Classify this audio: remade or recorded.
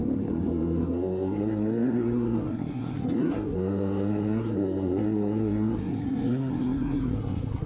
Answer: remade